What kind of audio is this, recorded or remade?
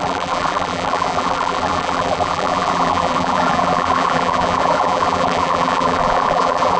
remade